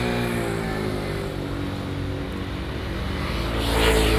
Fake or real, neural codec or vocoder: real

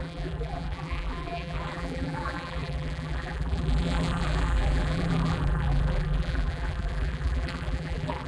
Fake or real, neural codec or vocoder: fake, vocoder, BigVGAN v2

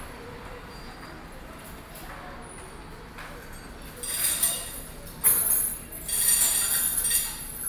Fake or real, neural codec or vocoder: real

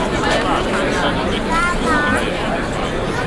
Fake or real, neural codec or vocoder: real